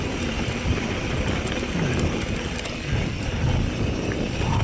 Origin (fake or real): real